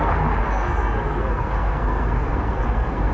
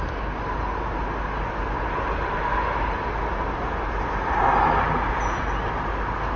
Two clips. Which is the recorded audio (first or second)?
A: second